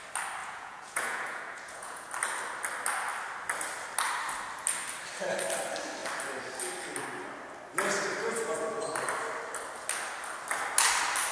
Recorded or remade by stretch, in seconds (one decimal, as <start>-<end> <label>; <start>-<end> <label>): 0.0-0.4 recorded; 0.4-2.1 remade; 2.1-11.3 recorded